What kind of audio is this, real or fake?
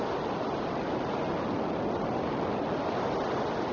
real